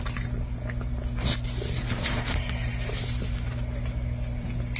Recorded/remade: recorded